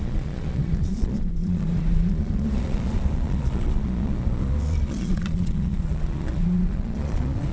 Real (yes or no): no